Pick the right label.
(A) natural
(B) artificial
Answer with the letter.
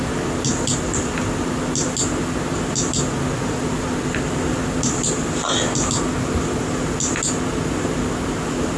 A